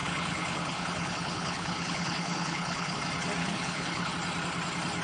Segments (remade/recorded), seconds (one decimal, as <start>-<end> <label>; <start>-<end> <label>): 0.0-3.0 remade; 3.0-3.4 recorded; 3.4-4.1 remade; 4.1-5.0 recorded